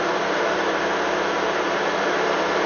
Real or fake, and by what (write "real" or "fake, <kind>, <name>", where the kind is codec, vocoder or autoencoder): real